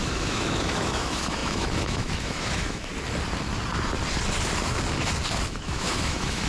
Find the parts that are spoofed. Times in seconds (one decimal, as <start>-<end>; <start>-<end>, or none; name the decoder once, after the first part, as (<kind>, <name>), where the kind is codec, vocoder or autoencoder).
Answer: 0.0-2.9 (autoencoder, DAC-VAE); 5.5-6.5